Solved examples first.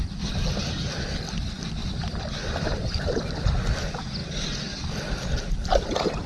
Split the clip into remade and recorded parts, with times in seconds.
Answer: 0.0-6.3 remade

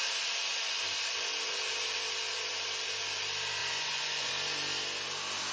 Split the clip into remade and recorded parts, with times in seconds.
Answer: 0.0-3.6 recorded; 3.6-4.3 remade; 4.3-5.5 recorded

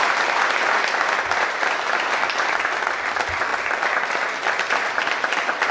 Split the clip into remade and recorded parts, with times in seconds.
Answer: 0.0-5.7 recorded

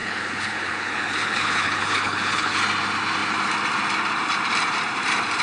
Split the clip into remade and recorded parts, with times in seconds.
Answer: 0.0-2.6 remade; 2.6-5.4 recorded